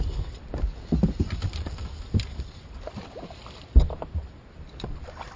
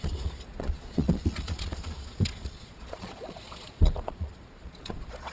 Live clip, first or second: first